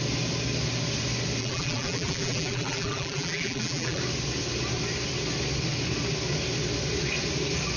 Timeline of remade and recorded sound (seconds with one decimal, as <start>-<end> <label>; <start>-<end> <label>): 0.0-1.4 recorded; 1.4-4.0 remade; 4.0-7.8 recorded